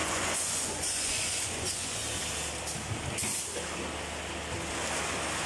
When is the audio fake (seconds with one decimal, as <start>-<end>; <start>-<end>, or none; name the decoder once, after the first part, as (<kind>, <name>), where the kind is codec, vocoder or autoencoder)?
0.0-2.0 (vocoder, Vocos)